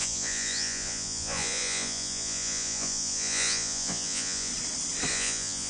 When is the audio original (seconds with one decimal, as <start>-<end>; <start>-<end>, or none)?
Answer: 4.5-5.1